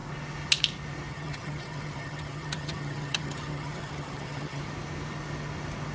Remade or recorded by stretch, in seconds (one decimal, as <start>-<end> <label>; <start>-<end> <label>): 0.0-1.1 recorded; 1.1-4.6 remade; 4.6-5.9 recorded